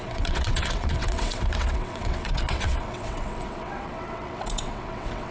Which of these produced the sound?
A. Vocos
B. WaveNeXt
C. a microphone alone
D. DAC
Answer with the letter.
B